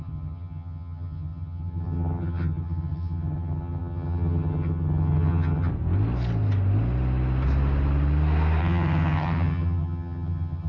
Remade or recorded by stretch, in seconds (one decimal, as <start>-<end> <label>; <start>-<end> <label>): 0.0-5.7 remade; 5.7-8.6 recorded; 8.6-10.7 remade